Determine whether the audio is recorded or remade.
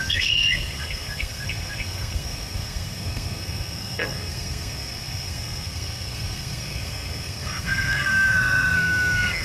remade